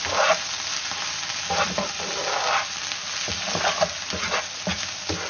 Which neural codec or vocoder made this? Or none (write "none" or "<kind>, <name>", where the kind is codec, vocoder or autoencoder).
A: none